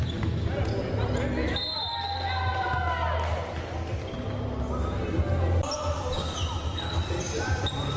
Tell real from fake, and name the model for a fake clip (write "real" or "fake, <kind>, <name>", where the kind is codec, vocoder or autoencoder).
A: real